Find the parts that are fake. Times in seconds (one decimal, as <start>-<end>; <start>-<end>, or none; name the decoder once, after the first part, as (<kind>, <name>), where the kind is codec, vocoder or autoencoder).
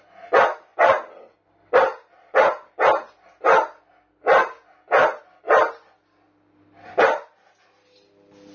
none